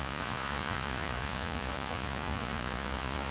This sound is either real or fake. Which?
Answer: fake